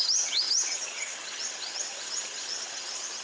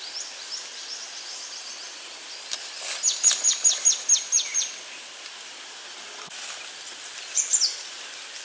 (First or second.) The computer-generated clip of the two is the first